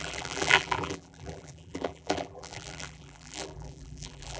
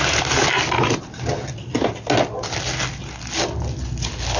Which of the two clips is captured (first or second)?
second